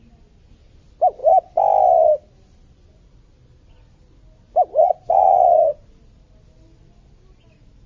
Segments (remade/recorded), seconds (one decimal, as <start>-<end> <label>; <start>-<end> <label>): 0.0-4.8 recorded; 4.8-6.0 remade; 6.0-7.9 recorded